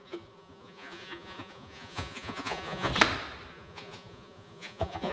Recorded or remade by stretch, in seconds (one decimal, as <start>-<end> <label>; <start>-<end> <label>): 0.0-2.9 remade; 2.9-3.5 recorded; 3.5-5.1 remade